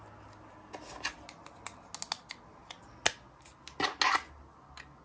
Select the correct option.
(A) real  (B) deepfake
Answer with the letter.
A